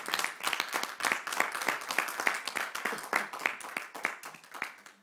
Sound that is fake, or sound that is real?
real